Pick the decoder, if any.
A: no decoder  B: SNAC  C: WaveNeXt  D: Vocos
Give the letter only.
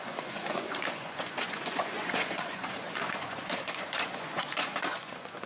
D